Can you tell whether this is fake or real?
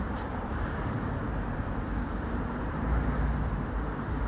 fake